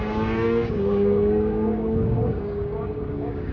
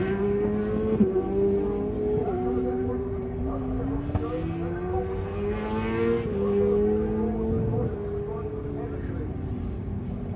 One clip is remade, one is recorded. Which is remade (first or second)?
first